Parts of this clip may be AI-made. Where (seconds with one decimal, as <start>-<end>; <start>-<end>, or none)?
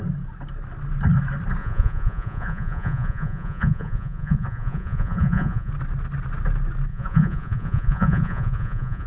1.6-5.7; 6.9-9.1